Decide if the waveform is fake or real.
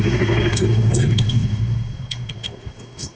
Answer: fake